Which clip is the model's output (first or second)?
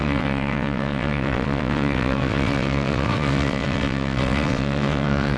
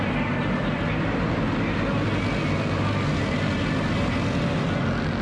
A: first